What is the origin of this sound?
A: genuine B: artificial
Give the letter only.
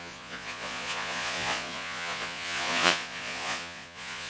B